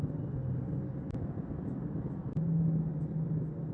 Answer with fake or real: real